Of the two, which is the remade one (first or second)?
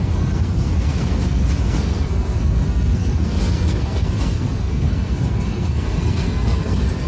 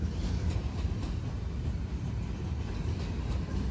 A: first